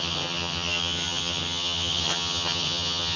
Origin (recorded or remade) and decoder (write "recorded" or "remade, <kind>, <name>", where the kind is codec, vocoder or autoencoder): remade, vocoder, HiFi-GAN